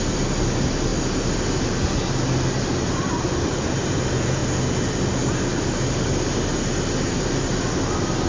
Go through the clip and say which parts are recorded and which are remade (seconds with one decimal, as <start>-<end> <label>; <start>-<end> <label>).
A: 0.0-0.9 remade; 0.9-2.9 recorded; 2.9-4.4 remade; 4.4-7.0 recorded; 7.0-8.3 remade